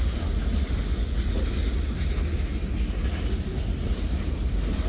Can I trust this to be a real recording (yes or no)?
yes